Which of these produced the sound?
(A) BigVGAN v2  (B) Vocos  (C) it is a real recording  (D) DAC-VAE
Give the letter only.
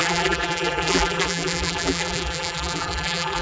A